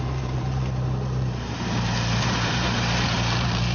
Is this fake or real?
fake